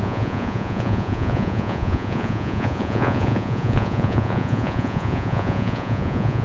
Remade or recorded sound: remade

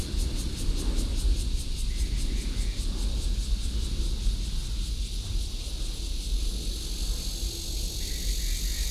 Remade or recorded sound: recorded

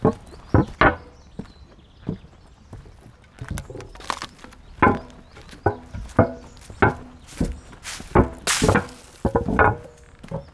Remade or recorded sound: recorded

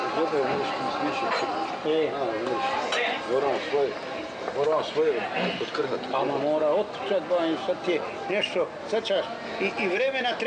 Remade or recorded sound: recorded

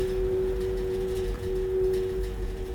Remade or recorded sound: remade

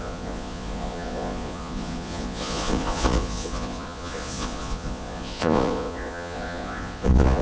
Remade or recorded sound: remade